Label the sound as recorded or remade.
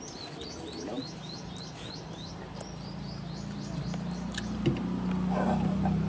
recorded